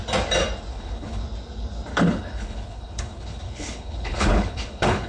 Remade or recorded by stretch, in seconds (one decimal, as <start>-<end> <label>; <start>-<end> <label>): 0.0-0.7 recorded; 0.7-1.2 remade; 1.2-1.9 recorded; 1.9-5.1 remade